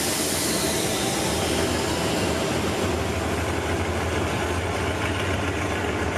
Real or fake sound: real